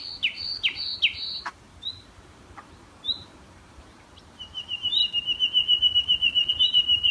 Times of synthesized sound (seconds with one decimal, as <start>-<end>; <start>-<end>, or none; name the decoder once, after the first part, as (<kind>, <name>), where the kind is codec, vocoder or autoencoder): 0.0-0.9 (vocoder, BigVGAN v2); 1.9-5.0; 6.5-7.1